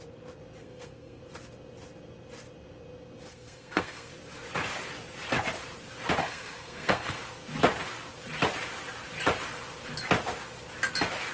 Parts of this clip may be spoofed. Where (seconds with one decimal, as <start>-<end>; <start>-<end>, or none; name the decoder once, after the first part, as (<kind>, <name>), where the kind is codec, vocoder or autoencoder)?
0.6-1.2 (codec, SNAC); 3.3-4.1; 6.2-7.2